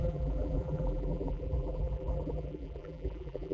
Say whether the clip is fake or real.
fake